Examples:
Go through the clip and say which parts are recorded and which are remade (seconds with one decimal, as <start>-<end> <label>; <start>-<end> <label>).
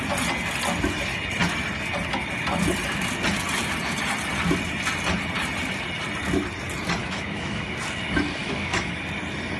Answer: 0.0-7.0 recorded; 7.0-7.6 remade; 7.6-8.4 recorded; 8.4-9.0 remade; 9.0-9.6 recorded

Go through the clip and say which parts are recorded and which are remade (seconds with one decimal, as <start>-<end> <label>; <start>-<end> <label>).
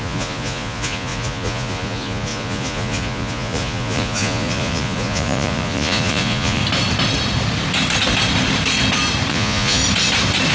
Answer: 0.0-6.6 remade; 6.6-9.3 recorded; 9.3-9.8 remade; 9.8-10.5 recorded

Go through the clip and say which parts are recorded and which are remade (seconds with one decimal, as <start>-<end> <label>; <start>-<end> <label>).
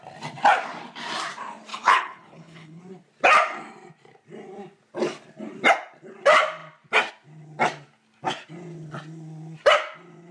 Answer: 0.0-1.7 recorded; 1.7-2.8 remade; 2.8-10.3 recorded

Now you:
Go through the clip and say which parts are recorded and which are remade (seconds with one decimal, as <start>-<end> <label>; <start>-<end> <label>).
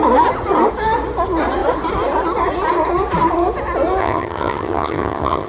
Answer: 0.0-4.0 recorded; 4.0-5.5 remade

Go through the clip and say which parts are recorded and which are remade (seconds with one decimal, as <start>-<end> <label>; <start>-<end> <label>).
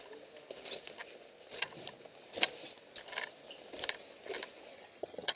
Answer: 0.0-4.7 recorded; 4.7-5.4 remade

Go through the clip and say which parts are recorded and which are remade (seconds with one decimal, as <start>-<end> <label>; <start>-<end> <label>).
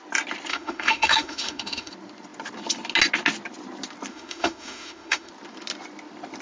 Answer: 0.0-0.5 recorded; 0.5-1.9 remade; 1.9-4.1 recorded; 4.1-5.3 remade; 5.3-6.4 recorded